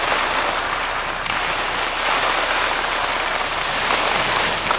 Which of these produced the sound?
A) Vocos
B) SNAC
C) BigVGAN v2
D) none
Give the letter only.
D